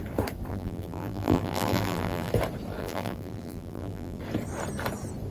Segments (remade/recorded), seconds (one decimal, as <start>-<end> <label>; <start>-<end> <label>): 0.0-0.5 recorded; 0.5-2.3 remade; 2.3-2.8 recorded; 2.8-4.2 remade; 4.2-5.3 recorded